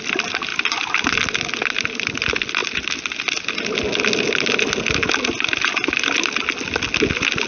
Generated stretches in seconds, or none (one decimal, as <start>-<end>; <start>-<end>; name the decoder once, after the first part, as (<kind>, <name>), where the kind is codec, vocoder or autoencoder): none